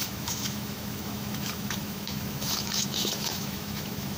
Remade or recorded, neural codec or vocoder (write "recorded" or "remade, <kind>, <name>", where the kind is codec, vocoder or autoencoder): remade, autoencoder, DAC-VAE